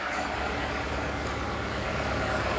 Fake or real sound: fake